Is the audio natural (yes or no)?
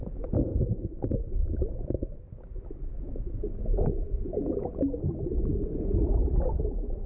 yes